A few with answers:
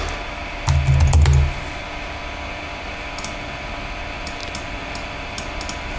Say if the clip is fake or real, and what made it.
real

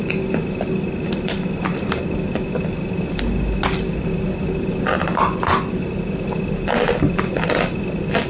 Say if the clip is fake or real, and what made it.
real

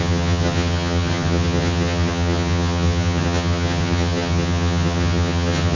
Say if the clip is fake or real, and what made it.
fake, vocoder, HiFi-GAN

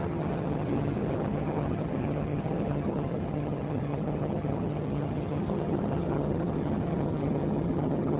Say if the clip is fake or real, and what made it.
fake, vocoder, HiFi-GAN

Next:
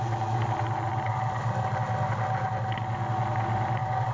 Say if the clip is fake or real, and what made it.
real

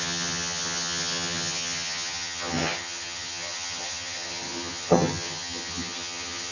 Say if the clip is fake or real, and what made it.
fake, vocoder, HiFi-GAN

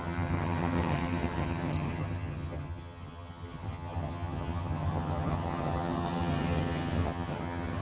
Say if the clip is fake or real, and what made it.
fake, vocoder, HiFi-GAN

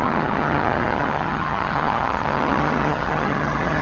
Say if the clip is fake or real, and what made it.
fake, vocoder, HiFi-GAN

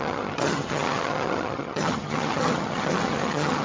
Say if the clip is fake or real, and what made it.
fake, vocoder, HiFi-GAN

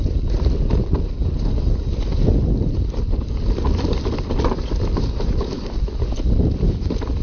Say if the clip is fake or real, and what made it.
real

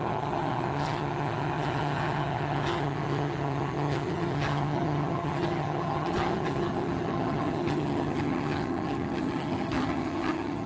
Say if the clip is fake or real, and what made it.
fake, vocoder, HiFi-GAN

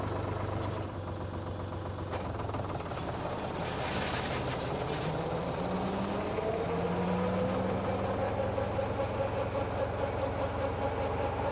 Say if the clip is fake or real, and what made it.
real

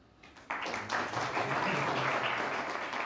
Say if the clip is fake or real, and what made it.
real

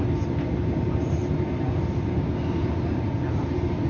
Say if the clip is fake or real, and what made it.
real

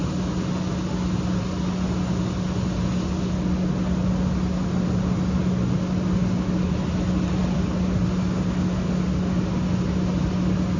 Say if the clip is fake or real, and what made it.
real